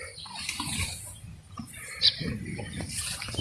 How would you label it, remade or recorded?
recorded